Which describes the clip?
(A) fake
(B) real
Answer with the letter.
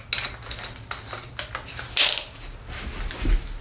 B